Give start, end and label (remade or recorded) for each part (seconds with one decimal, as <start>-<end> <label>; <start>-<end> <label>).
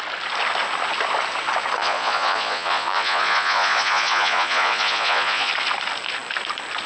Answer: 0.0-1.8 recorded; 1.8-5.5 remade; 5.5-6.9 recorded